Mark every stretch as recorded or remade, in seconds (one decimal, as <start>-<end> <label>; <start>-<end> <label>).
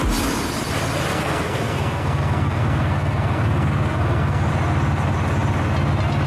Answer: 0.0-1.1 recorded; 1.1-4.5 remade; 4.5-6.3 recorded